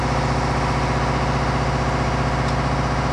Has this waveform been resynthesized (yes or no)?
no